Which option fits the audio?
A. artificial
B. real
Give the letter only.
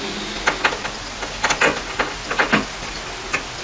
B